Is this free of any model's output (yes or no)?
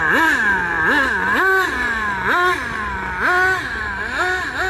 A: yes